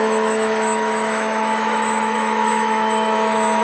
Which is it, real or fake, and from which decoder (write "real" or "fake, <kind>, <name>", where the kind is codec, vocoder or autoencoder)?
fake, autoencoder, DAC-VAE